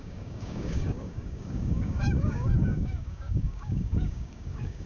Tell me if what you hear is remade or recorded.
remade